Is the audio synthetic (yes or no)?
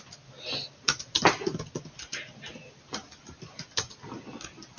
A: no